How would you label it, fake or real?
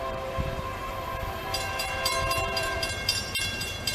fake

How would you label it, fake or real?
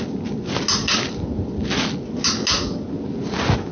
real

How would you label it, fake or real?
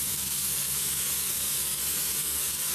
fake